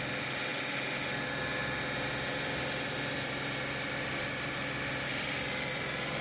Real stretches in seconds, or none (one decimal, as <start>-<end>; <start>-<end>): 0.0-6.2